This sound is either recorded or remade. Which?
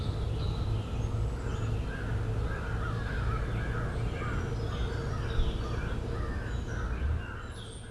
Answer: recorded